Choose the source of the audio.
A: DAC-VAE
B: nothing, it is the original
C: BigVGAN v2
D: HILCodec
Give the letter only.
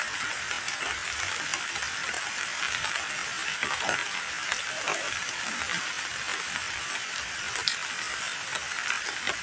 B